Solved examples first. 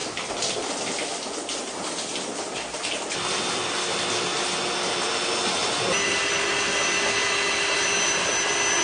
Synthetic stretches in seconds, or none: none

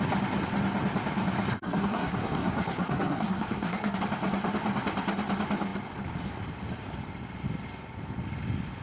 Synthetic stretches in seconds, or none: 1.5-4.0 (codec, SNAC)

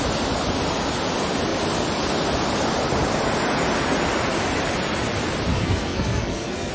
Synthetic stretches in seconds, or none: 5.5-6.7 (codec, SNAC)

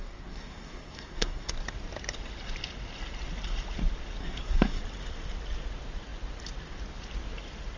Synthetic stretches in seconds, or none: 0.0-1.5 (codec, SNAC); 4.2-4.8

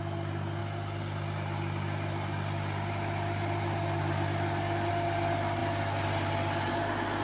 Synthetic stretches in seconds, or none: none

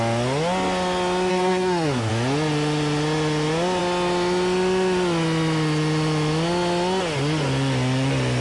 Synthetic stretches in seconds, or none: 1.3-2.1 (codec, SNAC)

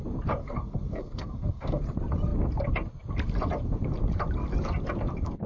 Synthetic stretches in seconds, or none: 0.4-1.8 (codec, SNAC)

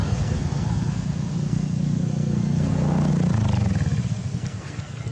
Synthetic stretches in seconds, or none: 0.0-3.1 (codec, SNAC); 4.1-5.1